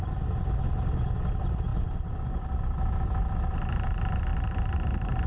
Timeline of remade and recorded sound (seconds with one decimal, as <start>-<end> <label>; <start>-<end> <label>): 0.0-5.3 recorded